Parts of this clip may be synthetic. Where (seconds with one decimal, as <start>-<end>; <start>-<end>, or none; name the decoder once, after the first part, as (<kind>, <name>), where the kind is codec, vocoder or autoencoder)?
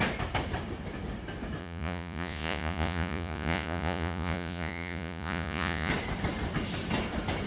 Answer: 1.6-5.9 (vocoder, Vocos)